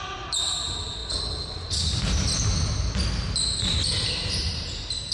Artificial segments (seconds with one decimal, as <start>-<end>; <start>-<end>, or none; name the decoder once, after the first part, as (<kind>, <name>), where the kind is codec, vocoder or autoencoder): none